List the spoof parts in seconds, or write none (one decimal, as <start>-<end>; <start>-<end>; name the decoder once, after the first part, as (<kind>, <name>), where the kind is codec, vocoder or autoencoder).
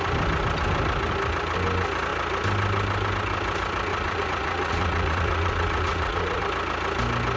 3.9-6.4 (vocoder, Vocos)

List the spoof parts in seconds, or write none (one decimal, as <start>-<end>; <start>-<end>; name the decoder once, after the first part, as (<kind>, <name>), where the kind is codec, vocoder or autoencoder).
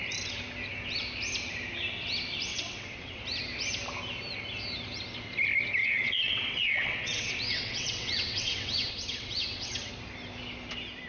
2.5-3.2 (vocoder, WaveNeXt); 5.8-9.9